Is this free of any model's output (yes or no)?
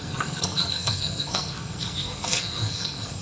no